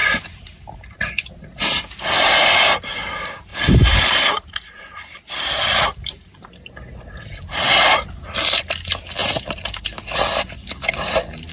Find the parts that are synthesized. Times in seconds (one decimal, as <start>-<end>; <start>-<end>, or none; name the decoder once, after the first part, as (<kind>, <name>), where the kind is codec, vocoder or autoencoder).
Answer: 0.0-1.1 (vocoder, BigVGAN v2); 3.5-7.2; 9.2-9.8